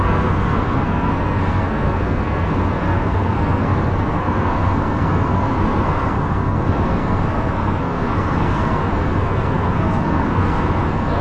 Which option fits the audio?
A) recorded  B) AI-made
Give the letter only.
B